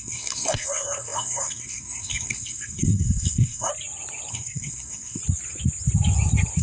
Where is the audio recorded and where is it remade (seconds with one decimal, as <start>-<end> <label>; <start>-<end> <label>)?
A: 0.0-3.7 remade; 3.7-4.3 recorded; 4.3-5.2 remade; 5.2-6.6 recorded